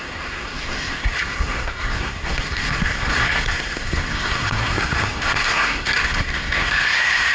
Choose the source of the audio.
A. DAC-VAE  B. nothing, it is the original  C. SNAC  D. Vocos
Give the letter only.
C